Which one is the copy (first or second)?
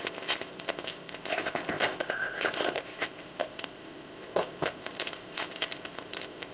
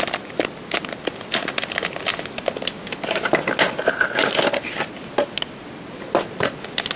first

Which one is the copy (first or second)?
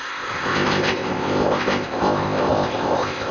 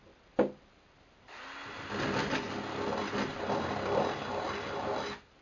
first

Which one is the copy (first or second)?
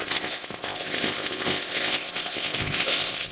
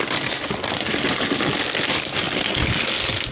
first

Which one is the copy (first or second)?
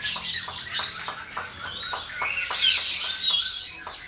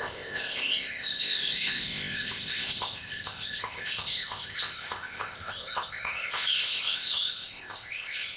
second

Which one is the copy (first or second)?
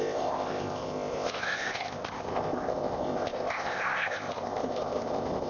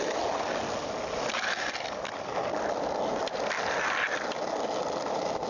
first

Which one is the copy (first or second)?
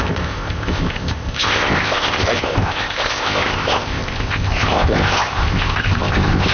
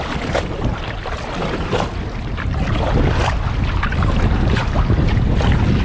first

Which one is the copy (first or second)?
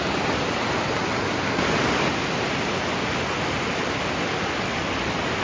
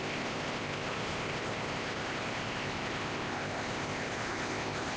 second